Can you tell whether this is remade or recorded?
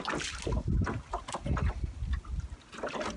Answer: recorded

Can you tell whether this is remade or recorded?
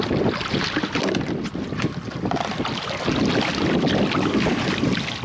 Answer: recorded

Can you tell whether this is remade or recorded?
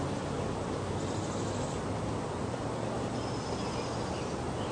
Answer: recorded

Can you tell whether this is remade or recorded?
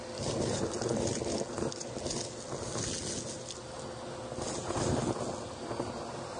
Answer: recorded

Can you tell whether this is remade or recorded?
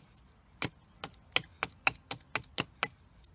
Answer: recorded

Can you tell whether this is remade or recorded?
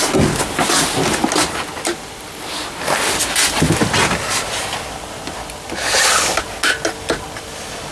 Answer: recorded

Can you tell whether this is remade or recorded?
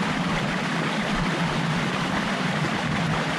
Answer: remade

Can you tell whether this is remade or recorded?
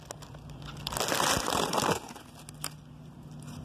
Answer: recorded